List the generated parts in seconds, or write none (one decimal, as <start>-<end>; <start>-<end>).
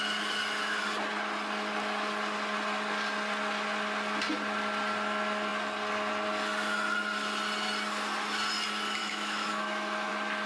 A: 9.0-10.1